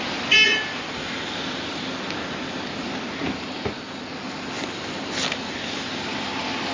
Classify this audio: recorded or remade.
recorded